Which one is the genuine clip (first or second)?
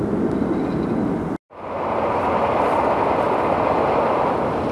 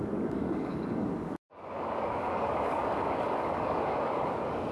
first